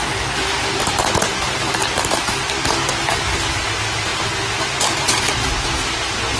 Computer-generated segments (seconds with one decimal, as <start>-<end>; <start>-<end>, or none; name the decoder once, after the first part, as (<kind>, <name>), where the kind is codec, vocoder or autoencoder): 0.0-1.0 (vocoder, BigVGAN v2); 1.8-2.5